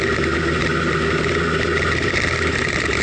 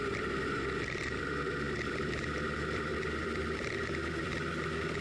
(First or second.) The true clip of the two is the first